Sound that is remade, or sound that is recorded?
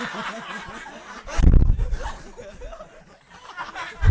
recorded